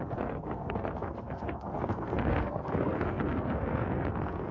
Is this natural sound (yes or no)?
no